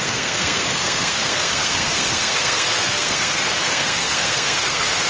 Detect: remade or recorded remade